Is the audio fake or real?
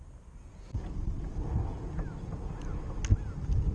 real